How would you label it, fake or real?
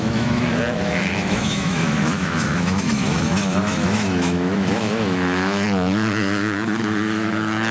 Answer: fake